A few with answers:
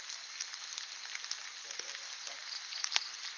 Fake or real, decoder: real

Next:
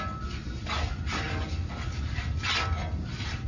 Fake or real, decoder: real